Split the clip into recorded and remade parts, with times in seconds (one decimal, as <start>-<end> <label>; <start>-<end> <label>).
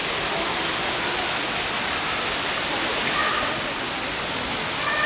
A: 0.0-5.1 recorded